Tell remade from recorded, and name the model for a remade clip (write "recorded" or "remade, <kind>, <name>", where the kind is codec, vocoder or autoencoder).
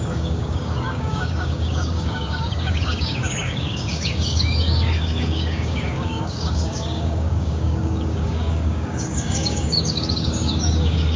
remade, codec, DAC